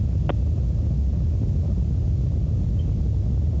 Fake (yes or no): no